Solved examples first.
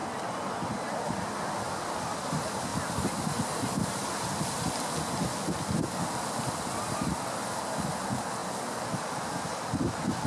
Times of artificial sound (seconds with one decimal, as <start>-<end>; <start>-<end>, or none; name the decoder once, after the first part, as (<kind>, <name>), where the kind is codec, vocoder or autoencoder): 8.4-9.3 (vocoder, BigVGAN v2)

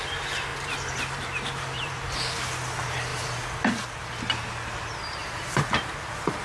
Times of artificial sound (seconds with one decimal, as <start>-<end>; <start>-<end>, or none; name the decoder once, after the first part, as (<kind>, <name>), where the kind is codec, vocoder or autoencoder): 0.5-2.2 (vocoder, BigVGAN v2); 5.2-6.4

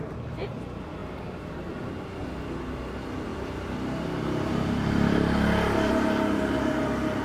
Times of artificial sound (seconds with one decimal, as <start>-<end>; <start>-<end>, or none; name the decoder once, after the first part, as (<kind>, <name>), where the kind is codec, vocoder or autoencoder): 3.3-5.9 (vocoder, BigVGAN v2)

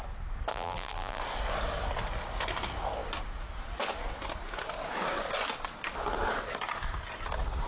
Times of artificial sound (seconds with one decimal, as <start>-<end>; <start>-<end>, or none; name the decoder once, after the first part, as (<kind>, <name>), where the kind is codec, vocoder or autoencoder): 0.5-1.2 (vocoder, BigVGAN v2)

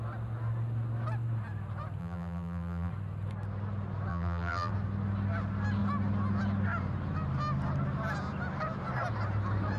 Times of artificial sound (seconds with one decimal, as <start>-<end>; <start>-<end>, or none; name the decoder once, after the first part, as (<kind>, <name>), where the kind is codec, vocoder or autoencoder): 2.0-2.9 (vocoder, BigVGAN v2); 4.1-4.7

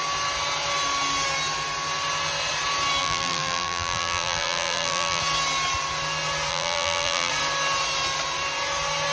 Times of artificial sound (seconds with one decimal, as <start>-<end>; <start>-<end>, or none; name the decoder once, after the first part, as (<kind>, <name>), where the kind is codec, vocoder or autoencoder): 3.0-5.2 (vocoder, BigVGAN v2); 6.5-7.3

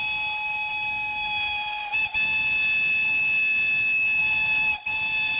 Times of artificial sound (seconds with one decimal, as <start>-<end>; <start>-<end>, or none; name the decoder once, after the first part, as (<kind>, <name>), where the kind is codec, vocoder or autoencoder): 4.2-5.4 (vocoder, BigVGAN v2)